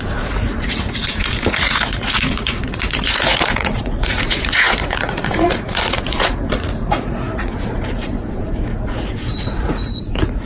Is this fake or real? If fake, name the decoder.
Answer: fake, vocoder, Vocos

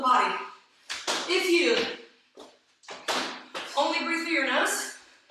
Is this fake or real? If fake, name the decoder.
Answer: real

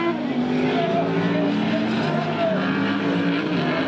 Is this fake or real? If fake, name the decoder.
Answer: real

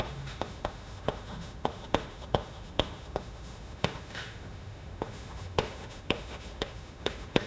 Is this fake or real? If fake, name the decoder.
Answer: fake, autoencoder, DAC-VAE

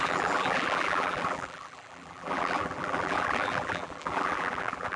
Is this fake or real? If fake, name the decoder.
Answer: fake, vocoder, BigVGAN v2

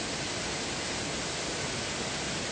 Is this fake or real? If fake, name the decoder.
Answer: real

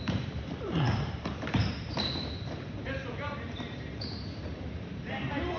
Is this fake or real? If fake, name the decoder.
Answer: fake, vocoder, BigVGAN v2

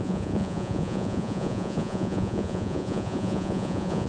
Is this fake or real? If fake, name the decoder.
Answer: fake, vocoder, Vocos